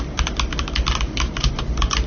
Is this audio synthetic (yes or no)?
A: no